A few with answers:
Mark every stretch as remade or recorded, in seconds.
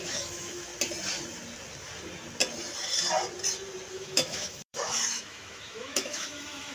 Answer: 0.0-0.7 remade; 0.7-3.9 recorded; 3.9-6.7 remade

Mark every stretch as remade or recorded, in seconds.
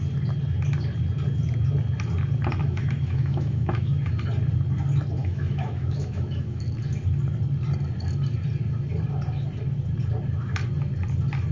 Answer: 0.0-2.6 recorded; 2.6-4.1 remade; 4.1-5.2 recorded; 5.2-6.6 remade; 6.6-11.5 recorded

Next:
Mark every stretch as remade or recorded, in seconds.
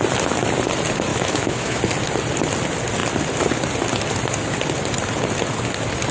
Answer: 0.0-1.1 recorded; 1.1-1.8 remade; 1.8-6.1 recorded